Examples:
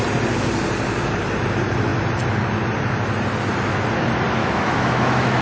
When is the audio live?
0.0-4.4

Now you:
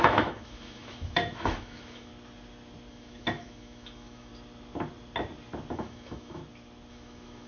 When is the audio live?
2.1-2.9; 4.3-5.7; 6.4-6.9

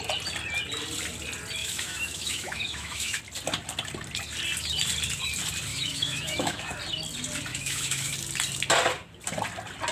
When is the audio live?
0.0-1.6; 3.2-5.7; 6.8-7.5; 8.1-9.9

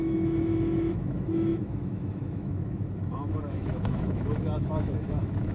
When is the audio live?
none

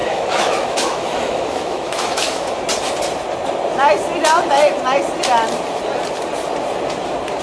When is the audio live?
2.5-7.4

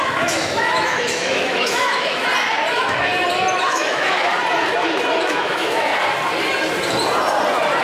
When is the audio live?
2.2-2.7; 3.1-3.6; 4.3-5.2; 5.9-7.8

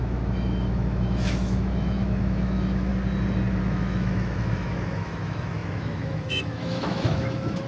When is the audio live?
2.9-3.6